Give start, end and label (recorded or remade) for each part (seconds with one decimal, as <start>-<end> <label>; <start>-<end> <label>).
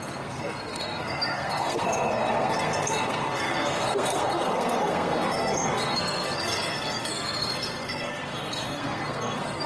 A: 0.0-9.7 remade